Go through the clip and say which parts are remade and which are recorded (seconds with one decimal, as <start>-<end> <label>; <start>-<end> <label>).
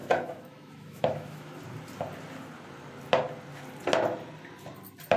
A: 0.0-1.6 remade; 1.6-5.2 recorded